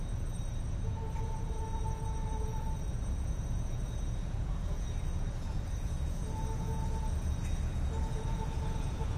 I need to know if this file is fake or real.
fake